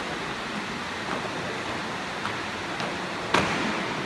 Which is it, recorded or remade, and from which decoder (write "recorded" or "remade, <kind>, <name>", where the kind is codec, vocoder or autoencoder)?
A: recorded